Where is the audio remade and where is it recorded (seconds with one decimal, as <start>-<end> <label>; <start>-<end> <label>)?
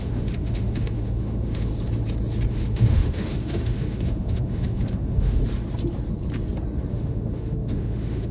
0.0-1.7 remade; 1.7-2.5 recorded; 2.5-5.4 remade; 5.4-6.9 recorded; 6.9-8.3 remade